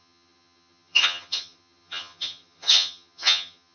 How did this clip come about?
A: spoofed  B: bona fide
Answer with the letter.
A